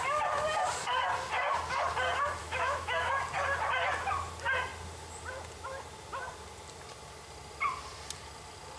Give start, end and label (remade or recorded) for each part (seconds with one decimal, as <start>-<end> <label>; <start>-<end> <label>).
0.0-2.4 recorded; 2.4-3.2 remade; 3.2-8.8 recorded

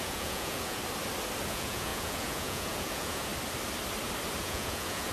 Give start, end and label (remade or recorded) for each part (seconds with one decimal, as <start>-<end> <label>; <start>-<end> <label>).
0.0-0.8 remade; 0.8-1.5 recorded; 1.5-3.3 remade; 3.3-4.4 recorded; 4.4-5.1 remade

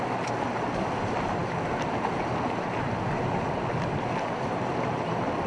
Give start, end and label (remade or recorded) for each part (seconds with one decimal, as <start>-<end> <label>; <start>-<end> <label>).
0.0-5.5 recorded

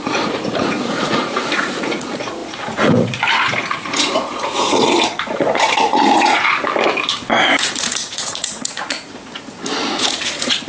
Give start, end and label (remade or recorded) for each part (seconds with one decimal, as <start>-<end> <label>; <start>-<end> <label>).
0.0-6.6 remade; 6.6-7.6 recorded; 7.6-10.7 remade